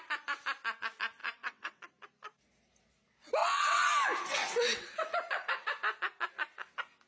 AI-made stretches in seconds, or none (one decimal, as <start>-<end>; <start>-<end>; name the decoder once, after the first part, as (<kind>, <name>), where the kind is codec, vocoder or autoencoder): 1.2-1.8 (vocoder, WaveNeXt); 3.4-3.9; 4.3-5.7